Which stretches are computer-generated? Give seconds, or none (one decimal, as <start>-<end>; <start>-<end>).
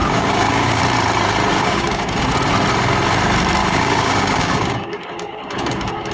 0.0-0.8; 1.6-2.2; 3.6-6.1